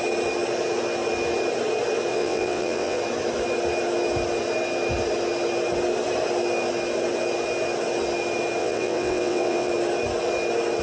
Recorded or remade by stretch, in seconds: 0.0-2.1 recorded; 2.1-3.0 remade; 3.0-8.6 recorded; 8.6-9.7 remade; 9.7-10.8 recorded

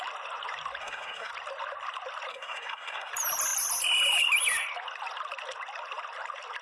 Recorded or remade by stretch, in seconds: 0.0-0.8 recorded; 0.8-1.3 remade; 1.3-2.3 recorded; 2.3-3.1 remade; 3.1-6.6 recorded

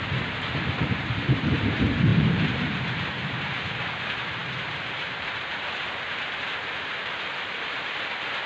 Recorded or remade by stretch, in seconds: 0.0-8.5 remade

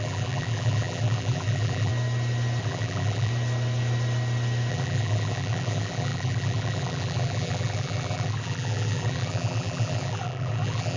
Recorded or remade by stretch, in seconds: 0.0-1.9 remade; 1.9-2.6 recorded; 2.6-3.3 remade; 3.3-4.7 recorded; 4.7-11.0 remade